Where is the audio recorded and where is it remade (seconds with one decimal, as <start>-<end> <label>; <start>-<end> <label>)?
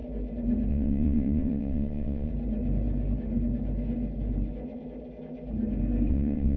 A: 0.0-0.7 recorded; 0.7-2.3 remade; 2.3-6.1 recorded; 6.1-6.6 remade